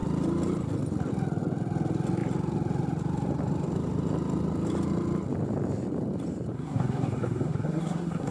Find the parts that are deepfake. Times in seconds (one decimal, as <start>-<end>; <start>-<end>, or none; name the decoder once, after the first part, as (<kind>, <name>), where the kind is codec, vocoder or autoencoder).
6.5-8.3 (codec, SNAC)